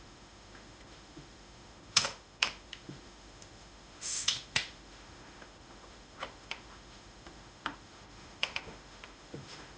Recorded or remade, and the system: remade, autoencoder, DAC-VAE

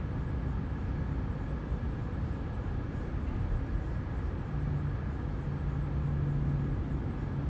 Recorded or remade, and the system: recorded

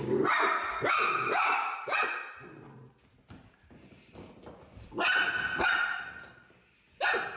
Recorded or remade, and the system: recorded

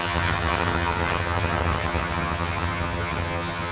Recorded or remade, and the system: remade, vocoder, HiFi-GAN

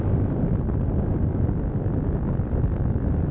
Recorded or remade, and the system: recorded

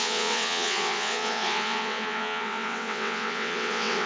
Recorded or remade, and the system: remade, vocoder, WaveNeXt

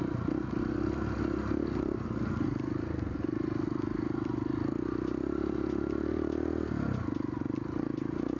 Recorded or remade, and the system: recorded